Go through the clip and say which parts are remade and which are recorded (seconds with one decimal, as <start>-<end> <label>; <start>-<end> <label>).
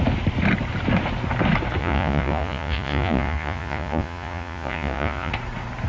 0.0-1.8 recorded; 1.8-5.3 remade; 5.3-5.9 recorded